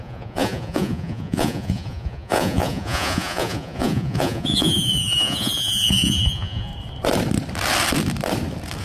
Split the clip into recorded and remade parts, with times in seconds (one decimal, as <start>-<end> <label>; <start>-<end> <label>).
0.0-6.7 remade; 6.7-8.8 recorded